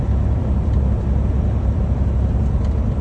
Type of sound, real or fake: fake